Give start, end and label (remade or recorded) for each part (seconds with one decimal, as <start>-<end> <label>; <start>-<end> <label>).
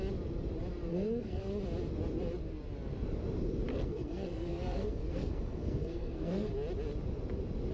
0.0-0.9 recorded; 0.9-1.5 remade; 1.5-3.7 recorded; 3.7-6.5 remade; 6.5-7.7 recorded